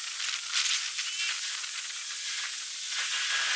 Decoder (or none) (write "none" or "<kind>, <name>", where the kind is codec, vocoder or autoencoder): none